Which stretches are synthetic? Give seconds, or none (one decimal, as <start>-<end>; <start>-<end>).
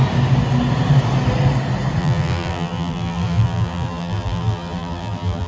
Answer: 2.0-5.5